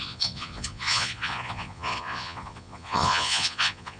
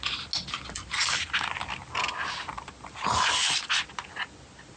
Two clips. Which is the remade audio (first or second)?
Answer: first